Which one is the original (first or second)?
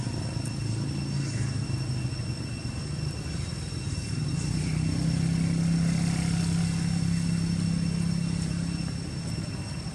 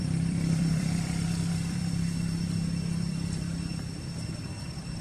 first